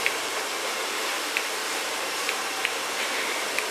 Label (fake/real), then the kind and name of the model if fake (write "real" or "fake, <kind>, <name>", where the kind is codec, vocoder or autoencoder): fake, vocoder, BigVGAN v2